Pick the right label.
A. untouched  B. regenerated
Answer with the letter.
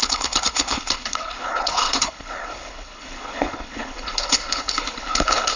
B